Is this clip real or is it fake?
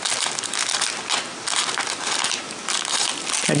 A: real